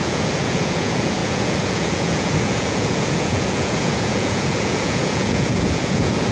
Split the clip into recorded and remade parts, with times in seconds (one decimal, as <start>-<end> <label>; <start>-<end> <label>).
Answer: 0.0-6.3 remade